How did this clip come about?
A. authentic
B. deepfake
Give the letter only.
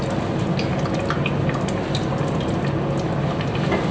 A